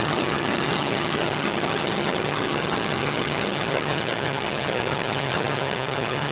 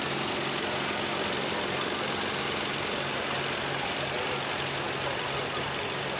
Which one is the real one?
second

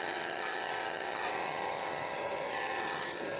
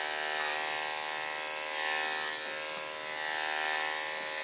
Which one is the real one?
second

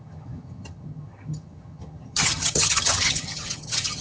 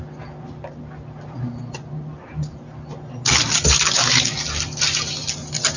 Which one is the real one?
second